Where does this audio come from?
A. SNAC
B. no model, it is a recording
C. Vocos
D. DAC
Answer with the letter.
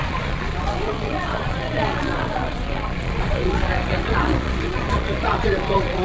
C